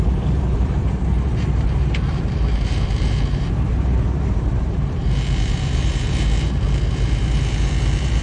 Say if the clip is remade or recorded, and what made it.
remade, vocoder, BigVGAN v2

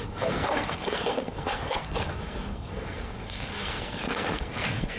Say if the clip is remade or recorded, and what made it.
remade, codec, SNAC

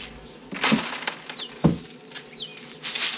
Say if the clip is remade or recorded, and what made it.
recorded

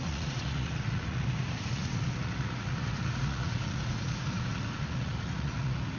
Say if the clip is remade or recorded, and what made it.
remade, vocoder, Vocos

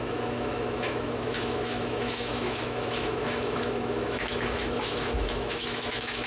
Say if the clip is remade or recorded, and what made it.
remade, autoencoder, DAC-VAE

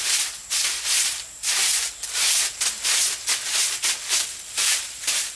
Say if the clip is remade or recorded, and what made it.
recorded